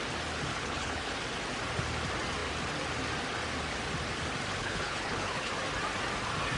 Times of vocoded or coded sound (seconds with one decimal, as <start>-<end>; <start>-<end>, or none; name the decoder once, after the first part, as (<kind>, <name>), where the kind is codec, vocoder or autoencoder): 0.5-1.1 (codec, HILCodec); 4.6-5.5